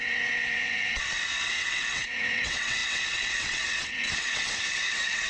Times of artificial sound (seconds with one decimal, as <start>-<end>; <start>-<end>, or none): 0.0-5.3